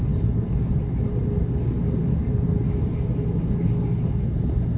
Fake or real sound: real